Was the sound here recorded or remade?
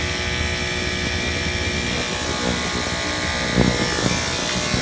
recorded